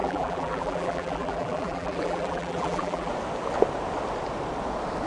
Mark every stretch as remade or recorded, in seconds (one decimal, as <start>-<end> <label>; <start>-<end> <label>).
0.0-3.1 remade; 3.1-5.1 recorded